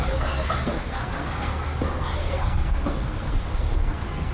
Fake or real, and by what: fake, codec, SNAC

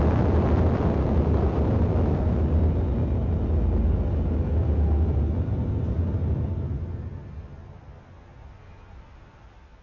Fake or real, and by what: real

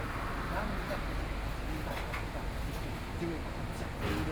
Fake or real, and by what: real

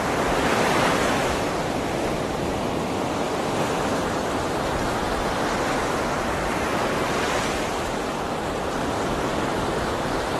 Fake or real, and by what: fake, vocoder, BigVGAN v2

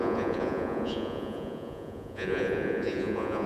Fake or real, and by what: fake, vocoder, Vocos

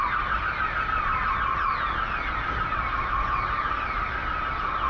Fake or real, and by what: real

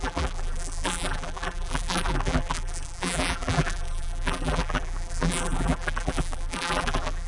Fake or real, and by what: fake, vocoder, BigVGAN v2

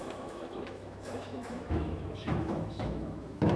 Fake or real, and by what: fake, autoencoder, DAC-VAE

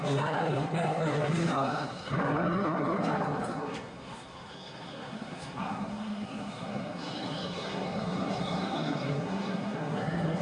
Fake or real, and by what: fake, codec, SNAC